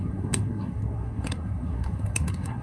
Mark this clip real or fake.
fake